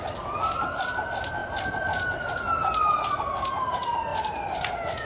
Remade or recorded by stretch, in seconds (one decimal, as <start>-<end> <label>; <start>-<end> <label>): 0.0-5.1 recorded